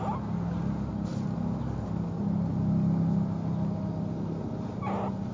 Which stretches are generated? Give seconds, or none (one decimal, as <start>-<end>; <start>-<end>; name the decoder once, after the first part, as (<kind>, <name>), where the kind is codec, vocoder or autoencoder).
none